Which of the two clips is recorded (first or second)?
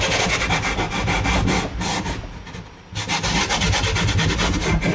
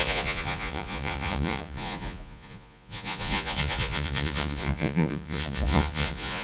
first